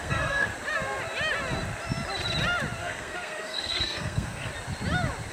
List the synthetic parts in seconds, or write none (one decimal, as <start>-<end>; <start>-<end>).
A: 0.0-0.5; 2.8-4.5